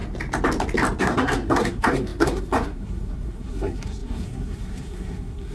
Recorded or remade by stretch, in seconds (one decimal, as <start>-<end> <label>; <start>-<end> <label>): 0.0-1.0 recorded; 1.0-5.5 remade